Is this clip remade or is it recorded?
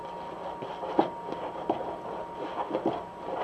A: recorded